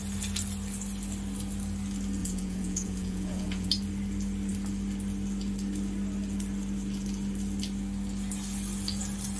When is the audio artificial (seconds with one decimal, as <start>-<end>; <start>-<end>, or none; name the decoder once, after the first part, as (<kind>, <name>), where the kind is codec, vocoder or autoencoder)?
2.2-3.7 (vocoder, Vocos)